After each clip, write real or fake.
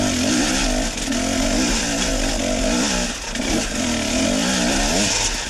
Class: real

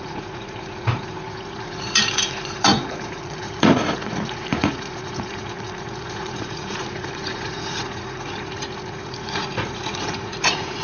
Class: fake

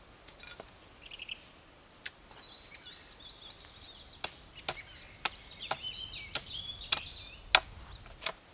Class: real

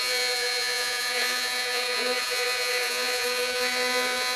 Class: fake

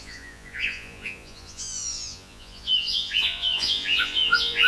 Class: fake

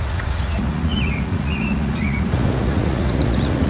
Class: fake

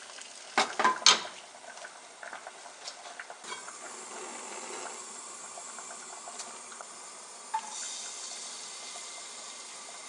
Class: real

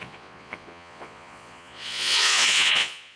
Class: fake